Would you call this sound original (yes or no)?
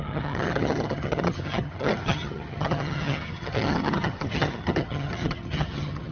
no